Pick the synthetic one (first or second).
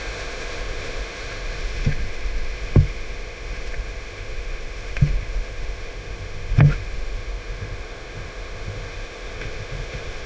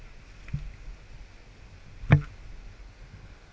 first